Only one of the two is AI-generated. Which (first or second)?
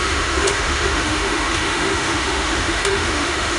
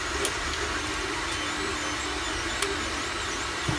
first